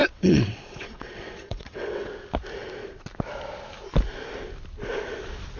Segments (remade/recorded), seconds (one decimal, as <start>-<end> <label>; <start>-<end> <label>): 0.0-2.1 remade; 2.1-5.6 recorded